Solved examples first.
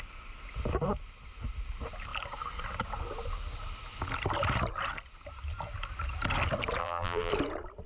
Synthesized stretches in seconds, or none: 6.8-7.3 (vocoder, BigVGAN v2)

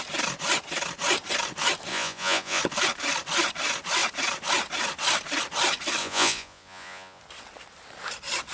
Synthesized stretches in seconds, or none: 1.9-2.6 (vocoder, Vocos); 6.0-7.2

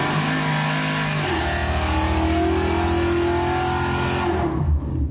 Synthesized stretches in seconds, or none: none

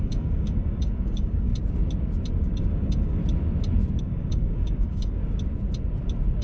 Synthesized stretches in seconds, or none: 0.0-1.5 (codec, DAC); 2.4-3.2; 4.0-5.2

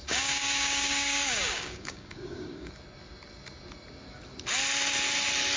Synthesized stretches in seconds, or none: 0.0-2.7 (codec, DAC)

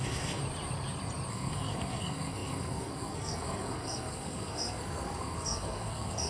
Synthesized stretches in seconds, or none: 0.0-0.4 (codec, SNAC); 1.3-6.3

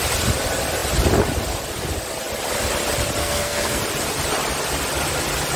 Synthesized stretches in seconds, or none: 3.2-3.8 (codec, SNAC)